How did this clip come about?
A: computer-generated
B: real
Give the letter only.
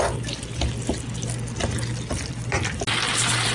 A